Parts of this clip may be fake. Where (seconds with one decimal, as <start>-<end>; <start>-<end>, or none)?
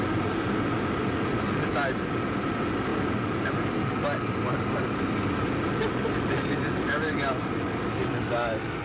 none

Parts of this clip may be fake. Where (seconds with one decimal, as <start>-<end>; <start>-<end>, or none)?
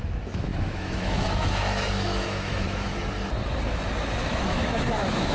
0.0-2.9; 4.4-5.3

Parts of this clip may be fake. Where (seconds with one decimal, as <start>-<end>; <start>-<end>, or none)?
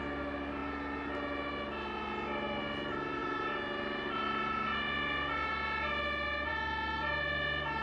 none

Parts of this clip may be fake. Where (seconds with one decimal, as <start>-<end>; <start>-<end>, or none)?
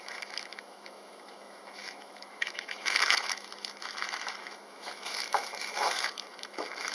0.0-6.9